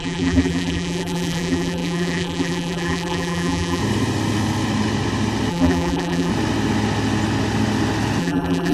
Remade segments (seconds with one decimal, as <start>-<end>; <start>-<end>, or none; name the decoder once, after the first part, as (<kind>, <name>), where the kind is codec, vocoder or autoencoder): 0.0-3.8 (vocoder, BigVGAN v2); 5.5-6.3; 8.2-8.7